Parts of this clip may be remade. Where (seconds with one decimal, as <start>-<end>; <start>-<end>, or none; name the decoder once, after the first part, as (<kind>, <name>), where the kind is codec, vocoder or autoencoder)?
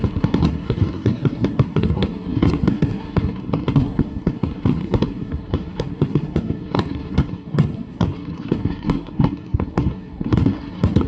0.0-11.1 (codec, SNAC)